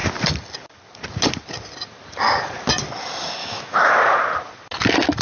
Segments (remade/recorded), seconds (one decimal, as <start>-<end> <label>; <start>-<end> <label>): 0.0-3.4 recorded; 3.4-3.9 remade; 3.9-5.2 recorded

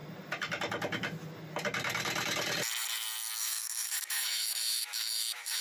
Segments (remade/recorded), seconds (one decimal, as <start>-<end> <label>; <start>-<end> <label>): 0.0-3.4 recorded; 3.4-5.6 remade

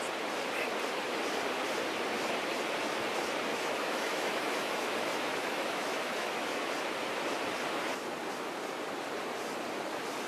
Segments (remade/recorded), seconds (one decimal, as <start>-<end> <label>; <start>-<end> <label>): 0.0-3.5 recorded; 3.5-6.7 remade; 6.7-10.3 recorded